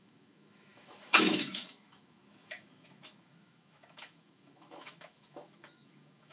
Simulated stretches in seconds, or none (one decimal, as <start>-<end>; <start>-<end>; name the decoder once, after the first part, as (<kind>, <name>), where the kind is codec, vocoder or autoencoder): 0.0-6.3 (autoencoder, DAC-VAE)